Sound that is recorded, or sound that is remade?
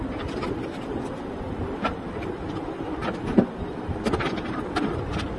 recorded